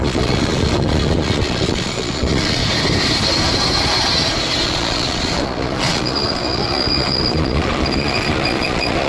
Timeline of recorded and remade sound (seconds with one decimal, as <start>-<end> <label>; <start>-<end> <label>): 0.0-2.6 remade; 2.6-4.6 recorded; 4.6-9.1 remade